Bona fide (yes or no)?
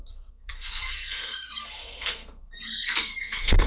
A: no